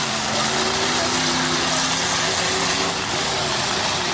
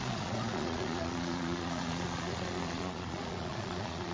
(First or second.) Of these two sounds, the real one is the first